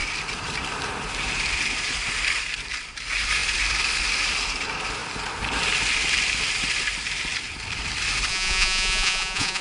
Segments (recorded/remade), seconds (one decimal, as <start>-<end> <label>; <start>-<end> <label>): 0.0-8.3 recorded; 8.3-9.6 remade